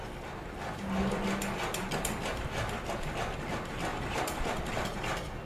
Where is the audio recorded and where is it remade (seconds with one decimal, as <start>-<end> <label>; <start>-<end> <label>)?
0.0-3.9 recorded; 3.9-4.7 remade; 4.7-5.5 recorded